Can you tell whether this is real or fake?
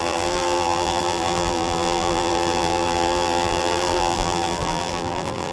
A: fake